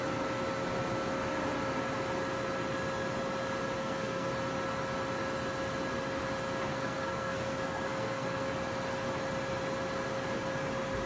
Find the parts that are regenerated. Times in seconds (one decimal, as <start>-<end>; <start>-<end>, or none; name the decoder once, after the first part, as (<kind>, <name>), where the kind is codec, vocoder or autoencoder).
3.8-4.3 (codec, SNAC); 6.7-8.5